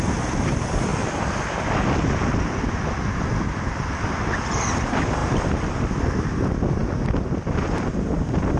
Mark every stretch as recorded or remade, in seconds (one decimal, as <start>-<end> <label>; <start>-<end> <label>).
0.0-0.9 remade; 0.9-4.5 recorded; 4.5-8.6 remade